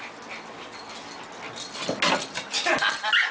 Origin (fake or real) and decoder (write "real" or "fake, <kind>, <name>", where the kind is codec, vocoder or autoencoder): real